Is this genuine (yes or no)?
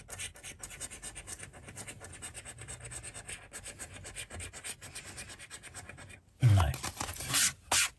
yes